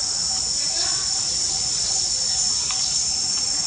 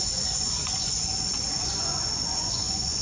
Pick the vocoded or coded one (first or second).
second